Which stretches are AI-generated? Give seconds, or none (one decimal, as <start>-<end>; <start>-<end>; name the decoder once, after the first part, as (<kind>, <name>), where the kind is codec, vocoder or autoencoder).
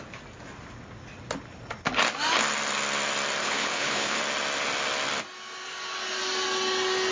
3.4-4.2 (codec, HILCodec)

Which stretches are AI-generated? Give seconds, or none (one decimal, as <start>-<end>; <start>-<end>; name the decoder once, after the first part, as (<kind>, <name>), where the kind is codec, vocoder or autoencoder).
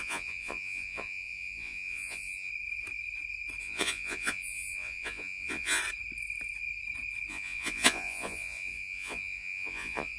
0.0-2.5 (vocoder, Vocos); 3.6-5.8; 7.3-10.2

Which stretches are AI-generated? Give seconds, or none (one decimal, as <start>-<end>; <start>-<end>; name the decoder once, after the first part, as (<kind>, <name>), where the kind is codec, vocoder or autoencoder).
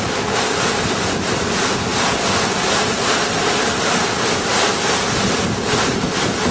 none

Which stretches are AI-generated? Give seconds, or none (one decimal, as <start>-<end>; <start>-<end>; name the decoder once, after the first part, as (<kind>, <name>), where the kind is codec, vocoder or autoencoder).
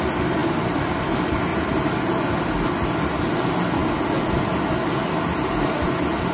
none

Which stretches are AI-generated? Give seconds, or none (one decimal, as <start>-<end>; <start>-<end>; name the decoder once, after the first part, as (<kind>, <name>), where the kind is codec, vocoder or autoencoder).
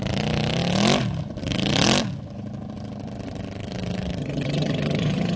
4.2-5.4 (vocoder, HiFi-GAN)